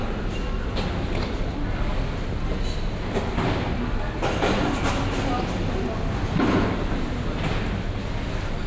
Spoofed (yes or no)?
no